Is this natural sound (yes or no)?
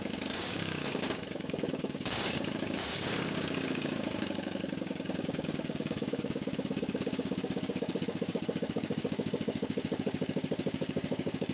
no